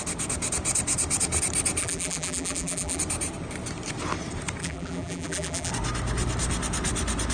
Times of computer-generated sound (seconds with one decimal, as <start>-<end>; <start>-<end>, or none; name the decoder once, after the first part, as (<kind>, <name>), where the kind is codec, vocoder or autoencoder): 1.8-3.0 (vocoder, BigVGAN v2); 4.6-5.7